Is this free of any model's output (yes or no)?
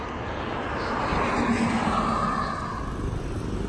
yes